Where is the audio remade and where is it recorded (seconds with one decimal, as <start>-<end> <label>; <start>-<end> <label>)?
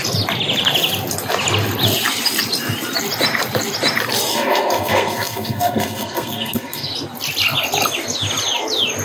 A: 0.0-4.3 recorded; 4.3-6.9 remade; 6.9-9.0 recorded